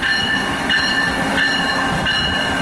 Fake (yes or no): no